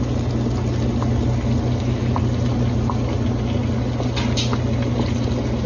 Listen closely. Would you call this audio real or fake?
real